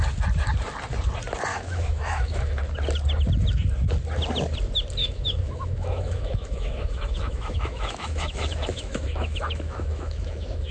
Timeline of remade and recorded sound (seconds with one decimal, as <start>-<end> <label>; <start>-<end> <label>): 0.0-1.5 recorded; 1.5-2.6 remade; 2.6-5.0 recorded; 5.0-10.7 remade

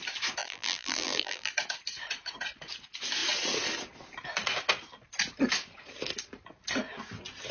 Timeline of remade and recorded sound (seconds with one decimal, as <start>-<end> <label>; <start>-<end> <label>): 0.0-0.4 recorded; 0.4-1.5 remade; 1.5-7.5 recorded

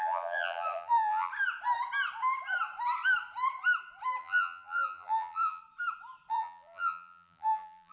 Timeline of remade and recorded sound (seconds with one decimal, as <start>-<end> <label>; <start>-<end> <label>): 0.0-1.3 remade; 1.3-4.2 recorded; 4.2-5.6 remade; 5.6-6.3 recorded; 6.3-7.9 remade

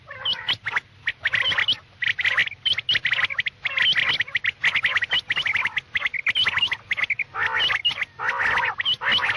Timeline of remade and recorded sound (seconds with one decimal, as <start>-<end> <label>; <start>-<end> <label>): 0.0-9.4 recorded

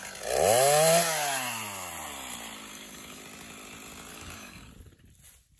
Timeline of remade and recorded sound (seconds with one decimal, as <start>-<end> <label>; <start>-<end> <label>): 0.0-2.7 recorded; 2.7-3.2 remade; 3.2-4.1 recorded; 4.1-4.7 remade; 4.7-5.6 recorded

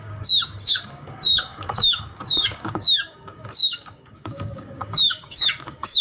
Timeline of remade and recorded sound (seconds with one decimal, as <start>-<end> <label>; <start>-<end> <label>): 0.0-6.0 remade

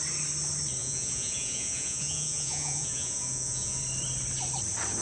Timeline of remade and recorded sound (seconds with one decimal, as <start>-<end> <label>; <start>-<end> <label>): 0.0-0.8 recorded; 0.8-3.8 remade; 3.8-5.0 recorded

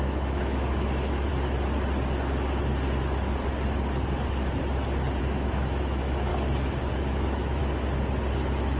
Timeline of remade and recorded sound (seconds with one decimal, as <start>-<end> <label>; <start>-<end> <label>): 0.0-1.3 remade; 1.3-5.2 recorded; 5.2-6.3 remade; 6.3-6.9 recorded; 6.9-7.6 remade; 7.6-8.8 recorded